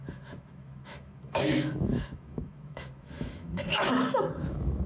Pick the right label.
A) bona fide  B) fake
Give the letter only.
B